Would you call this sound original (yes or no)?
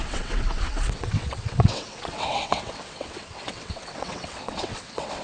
no